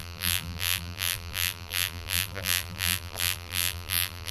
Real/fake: fake